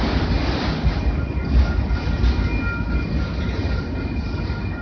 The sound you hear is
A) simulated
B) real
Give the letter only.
B